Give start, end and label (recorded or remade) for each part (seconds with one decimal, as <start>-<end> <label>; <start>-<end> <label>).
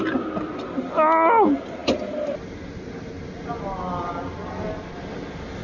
0.0-5.6 recorded